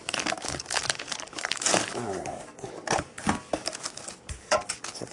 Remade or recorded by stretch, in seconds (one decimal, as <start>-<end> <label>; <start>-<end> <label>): 0.0-5.1 remade